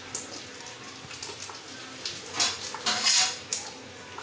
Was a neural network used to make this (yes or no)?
no